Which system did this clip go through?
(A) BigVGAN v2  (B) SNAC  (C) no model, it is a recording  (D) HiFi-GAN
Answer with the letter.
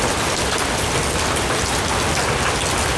C